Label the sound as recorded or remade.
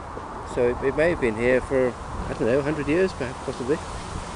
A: recorded